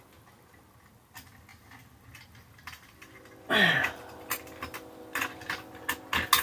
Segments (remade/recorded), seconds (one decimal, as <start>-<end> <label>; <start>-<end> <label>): 0.0-6.4 recorded